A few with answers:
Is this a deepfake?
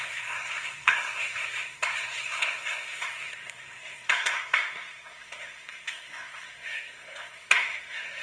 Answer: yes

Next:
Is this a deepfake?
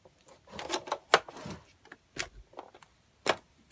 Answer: no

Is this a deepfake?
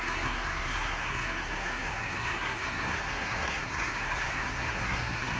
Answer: yes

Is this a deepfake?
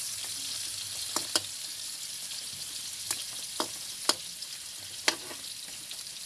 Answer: no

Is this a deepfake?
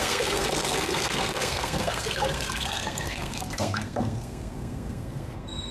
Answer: yes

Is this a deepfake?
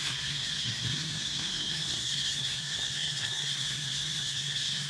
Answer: yes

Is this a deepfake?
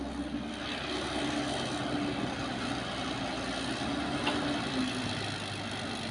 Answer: no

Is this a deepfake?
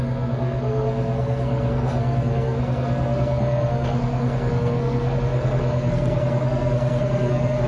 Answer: yes